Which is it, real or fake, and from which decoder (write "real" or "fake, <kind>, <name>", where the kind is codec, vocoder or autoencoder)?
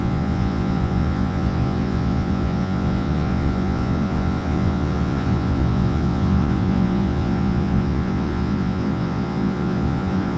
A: fake, vocoder, Vocos